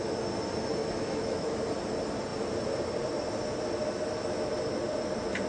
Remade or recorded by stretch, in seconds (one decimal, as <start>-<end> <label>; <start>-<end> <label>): 0.0-0.8 recorded; 0.8-1.6 remade; 1.6-5.5 recorded